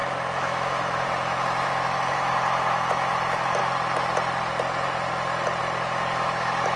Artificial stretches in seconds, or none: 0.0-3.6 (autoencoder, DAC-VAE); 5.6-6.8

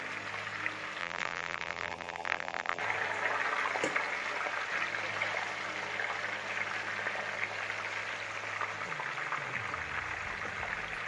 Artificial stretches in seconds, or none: 1.0-2.8 (vocoder, BigVGAN v2)

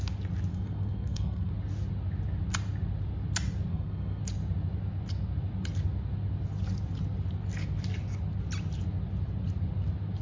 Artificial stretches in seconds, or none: 0.5-1.5 (codec, SNAC); 3.7-4.2